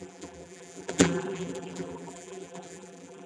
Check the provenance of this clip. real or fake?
fake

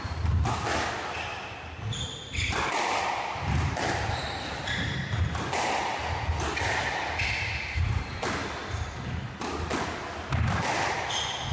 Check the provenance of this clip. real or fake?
real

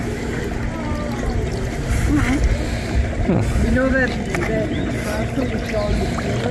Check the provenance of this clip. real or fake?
real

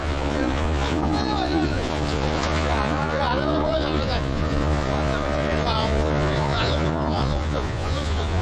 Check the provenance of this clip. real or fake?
fake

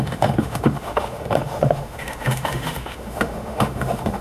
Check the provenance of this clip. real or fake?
fake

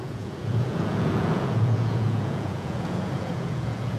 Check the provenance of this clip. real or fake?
fake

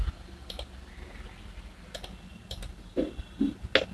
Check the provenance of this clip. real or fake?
real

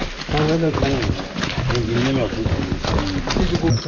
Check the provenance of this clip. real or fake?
real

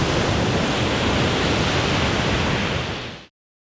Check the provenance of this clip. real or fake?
real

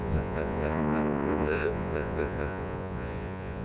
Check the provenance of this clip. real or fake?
fake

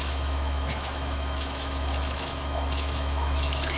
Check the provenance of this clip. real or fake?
fake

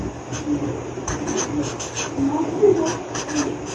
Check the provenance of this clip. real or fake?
real